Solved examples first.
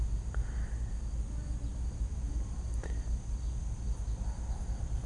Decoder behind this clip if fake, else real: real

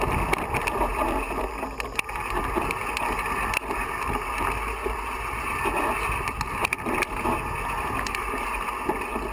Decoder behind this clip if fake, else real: real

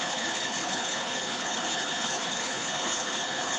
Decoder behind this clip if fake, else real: fake, codec, HILCodec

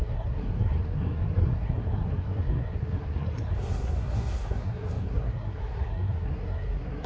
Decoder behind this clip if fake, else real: fake, codec, SNAC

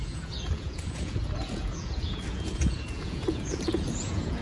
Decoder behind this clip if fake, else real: fake, vocoder, Vocos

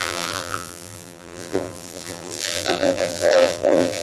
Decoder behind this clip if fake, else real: fake, vocoder, BigVGAN v2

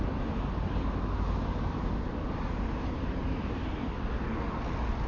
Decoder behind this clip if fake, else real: real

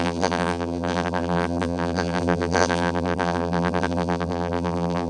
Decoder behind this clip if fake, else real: fake, vocoder, BigVGAN v2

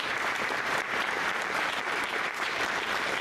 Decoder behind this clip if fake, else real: fake, vocoder, BigVGAN v2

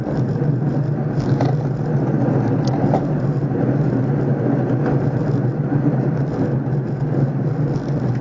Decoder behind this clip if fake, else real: real